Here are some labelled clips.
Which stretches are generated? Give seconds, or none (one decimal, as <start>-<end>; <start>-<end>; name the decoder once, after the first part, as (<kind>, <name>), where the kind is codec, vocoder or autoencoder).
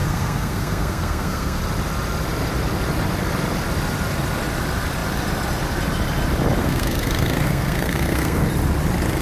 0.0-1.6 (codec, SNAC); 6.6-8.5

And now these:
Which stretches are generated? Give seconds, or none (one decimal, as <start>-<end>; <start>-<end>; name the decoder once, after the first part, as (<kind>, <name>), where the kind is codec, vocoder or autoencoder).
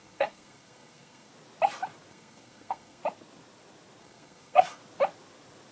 0.0-1.3 (codec, SNAC); 2.1-3.0; 4.0-4.8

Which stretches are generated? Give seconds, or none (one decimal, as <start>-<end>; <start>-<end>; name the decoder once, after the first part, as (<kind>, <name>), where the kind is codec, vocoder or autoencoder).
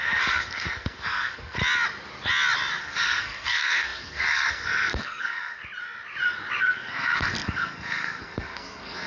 0.0-1.6 (codec, SNAC); 2.8-5.6; 6.6-9.1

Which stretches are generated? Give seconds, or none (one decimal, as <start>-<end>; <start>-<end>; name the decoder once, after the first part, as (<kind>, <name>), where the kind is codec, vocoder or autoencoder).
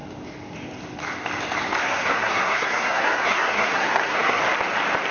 1.8-4.4 (codec, SNAC)